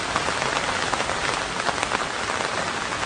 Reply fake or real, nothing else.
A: real